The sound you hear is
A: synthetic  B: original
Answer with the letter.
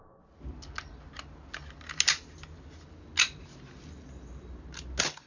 B